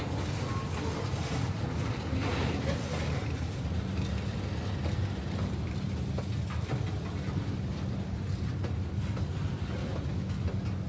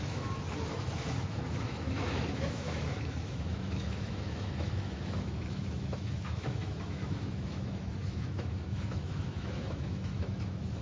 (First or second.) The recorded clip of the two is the first